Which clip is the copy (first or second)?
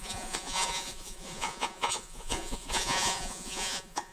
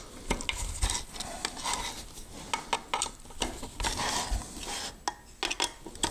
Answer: first